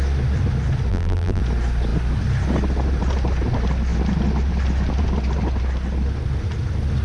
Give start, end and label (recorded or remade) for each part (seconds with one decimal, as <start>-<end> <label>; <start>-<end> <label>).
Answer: 0.0-0.9 recorded; 0.9-1.4 remade; 1.4-7.0 recorded

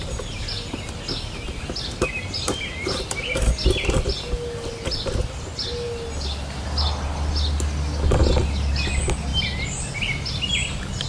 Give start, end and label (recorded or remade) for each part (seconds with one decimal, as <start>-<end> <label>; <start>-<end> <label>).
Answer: 0.0-11.1 recorded

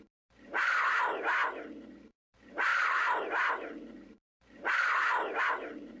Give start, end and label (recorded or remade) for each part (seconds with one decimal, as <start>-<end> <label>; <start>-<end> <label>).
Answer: 0.0-1.4 remade; 1.4-2.1 recorded; 2.1-6.0 remade

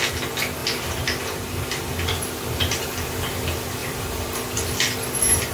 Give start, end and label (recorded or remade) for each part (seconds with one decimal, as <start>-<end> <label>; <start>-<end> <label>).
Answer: 0.0-0.6 recorded; 0.6-1.9 remade; 1.9-3.8 recorded; 3.8-4.4 remade; 4.4-5.5 recorded

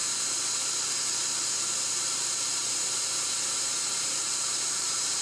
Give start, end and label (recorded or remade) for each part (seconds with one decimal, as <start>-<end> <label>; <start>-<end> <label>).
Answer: 0.0-0.8 recorded; 0.8-2.6 remade; 2.6-4.0 recorded; 4.0-5.2 remade

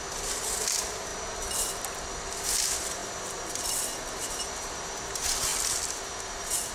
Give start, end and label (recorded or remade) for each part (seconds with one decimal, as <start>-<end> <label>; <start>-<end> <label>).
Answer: 0.0-6.7 recorded